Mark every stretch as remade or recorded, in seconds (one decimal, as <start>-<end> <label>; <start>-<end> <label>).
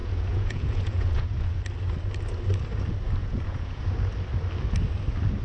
0.0-1.6 remade; 1.6-3.2 recorded; 3.2-3.8 remade; 3.8-5.4 recorded